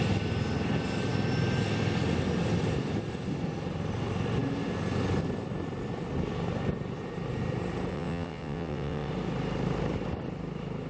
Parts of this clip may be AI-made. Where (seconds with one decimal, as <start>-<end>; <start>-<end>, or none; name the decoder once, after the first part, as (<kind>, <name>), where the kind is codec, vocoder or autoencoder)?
7.9-9.1 (vocoder, WaveNeXt)